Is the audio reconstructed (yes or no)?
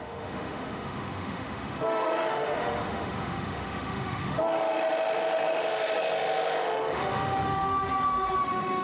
yes